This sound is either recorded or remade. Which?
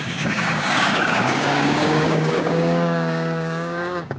remade